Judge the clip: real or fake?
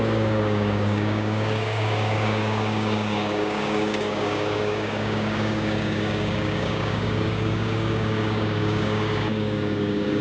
fake